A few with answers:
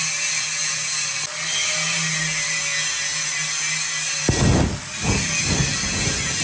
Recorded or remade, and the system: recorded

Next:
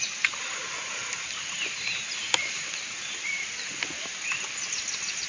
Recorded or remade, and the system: recorded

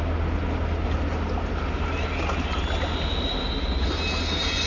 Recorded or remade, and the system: recorded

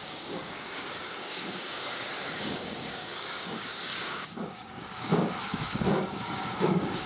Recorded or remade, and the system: remade, codec, DAC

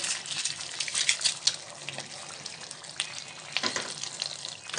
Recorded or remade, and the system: recorded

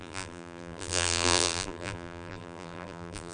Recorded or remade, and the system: remade, vocoder, BigVGAN v2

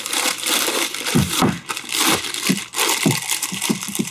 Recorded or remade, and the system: remade, vocoder, BigVGAN v2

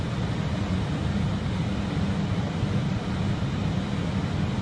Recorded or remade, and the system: recorded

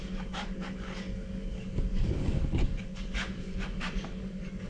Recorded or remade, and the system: remade, codec, DAC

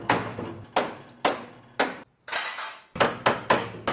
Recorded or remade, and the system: recorded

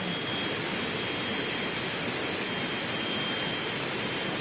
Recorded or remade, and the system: recorded